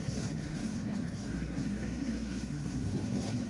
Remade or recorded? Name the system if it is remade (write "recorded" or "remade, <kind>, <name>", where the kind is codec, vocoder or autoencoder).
remade, codec, SNAC